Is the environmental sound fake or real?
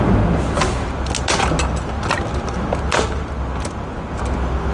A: real